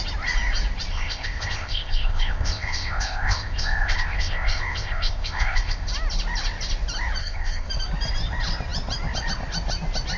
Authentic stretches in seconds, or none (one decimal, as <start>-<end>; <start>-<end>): 0.0-0.9; 5.9-7.2; 7.7-10.2